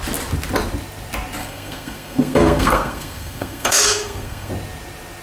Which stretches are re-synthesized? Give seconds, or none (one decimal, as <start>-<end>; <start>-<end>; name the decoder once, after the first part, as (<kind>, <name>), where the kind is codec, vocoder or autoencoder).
1.4-4.5 (codec, SNAC)